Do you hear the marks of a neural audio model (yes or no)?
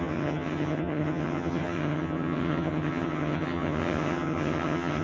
yes